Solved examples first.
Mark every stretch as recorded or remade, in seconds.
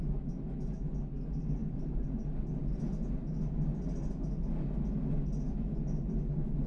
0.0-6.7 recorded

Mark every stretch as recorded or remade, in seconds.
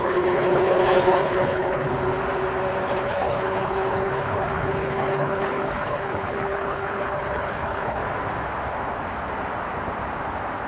0.0-1.9 remade; 1.9-2.9 recorded; 2.9-8.0 remade; 8.0-10.7 recorded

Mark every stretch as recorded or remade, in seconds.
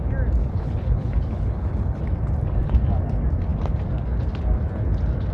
0.0-0.4 recorded; 0.4-2.0 remade; 2.0-5.3 recorded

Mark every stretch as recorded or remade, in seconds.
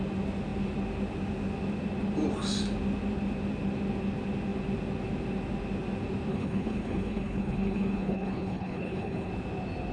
0.0-6.3 recorded; 6.3-9.3 remade; 9.3-9.9 recorded